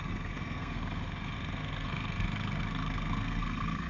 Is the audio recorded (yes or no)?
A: no